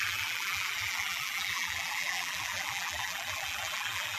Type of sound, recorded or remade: remade